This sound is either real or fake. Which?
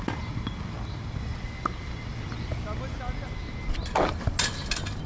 real